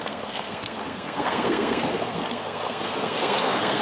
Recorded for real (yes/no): no